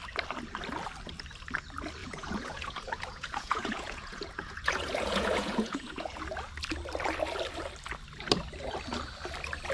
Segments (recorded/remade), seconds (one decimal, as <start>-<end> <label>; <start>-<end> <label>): 0.0-2.0 recorded; 2.0-6.2 remade; 6.2-9.7 recorded